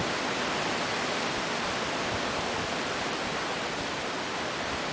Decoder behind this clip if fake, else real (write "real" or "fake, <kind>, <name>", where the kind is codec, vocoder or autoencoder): fake, vocoder, BigVGAN v2